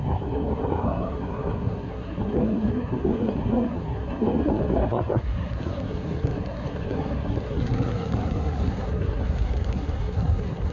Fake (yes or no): yes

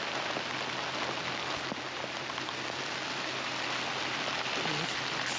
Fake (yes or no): no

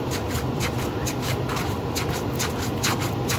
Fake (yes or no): no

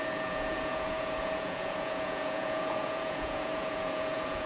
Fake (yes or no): yes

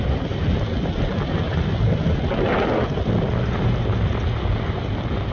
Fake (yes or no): no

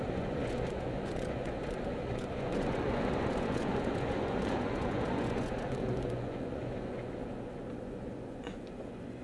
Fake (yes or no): yes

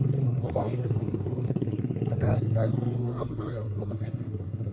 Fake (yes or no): yes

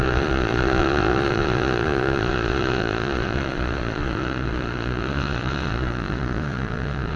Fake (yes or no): yes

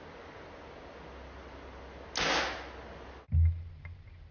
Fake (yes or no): no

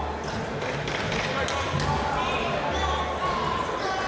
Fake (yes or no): no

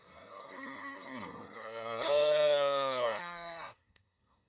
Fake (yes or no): yes